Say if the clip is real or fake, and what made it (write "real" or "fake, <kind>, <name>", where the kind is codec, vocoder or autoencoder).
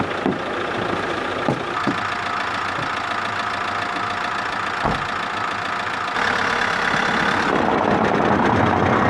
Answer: real